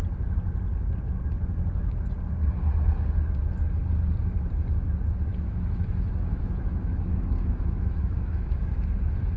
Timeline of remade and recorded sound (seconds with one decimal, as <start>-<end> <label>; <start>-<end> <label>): 0.0-5.3 recorded; 5.3-8.7 remade; 8.7-9.4 recorded